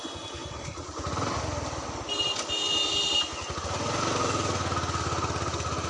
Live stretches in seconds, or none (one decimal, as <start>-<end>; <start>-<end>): 0.0-0.4; 1.4-5.9

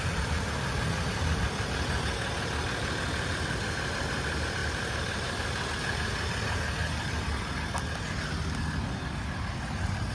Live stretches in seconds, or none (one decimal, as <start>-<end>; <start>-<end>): 0.0-4.6; 5.7-10.1

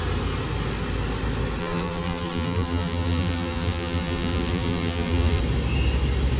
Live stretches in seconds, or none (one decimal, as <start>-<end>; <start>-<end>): 0.0-1.6; 5.4-6.4

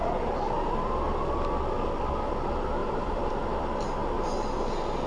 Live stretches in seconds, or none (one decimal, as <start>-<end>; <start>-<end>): 0.0-2.8; 3.3-5.1

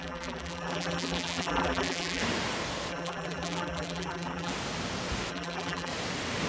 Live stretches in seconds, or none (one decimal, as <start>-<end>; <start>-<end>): 2.2-2.9; 4.5-5.3; 5.9-6.5

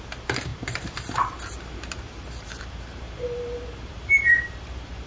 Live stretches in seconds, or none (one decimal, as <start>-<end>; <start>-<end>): none

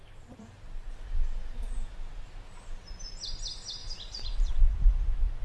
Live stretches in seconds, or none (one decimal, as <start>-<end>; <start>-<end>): 0.9-3.8; 4.6-5.4

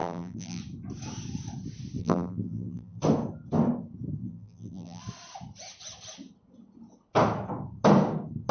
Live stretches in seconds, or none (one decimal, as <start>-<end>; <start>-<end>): 0.6-2.0; 3.0-4.2; 5.0-8.5